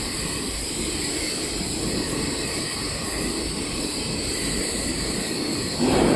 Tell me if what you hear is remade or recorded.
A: remade